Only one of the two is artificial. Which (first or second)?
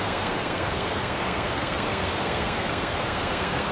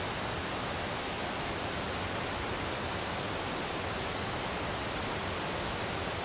first